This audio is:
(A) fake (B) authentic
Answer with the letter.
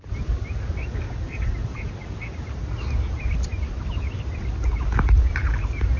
B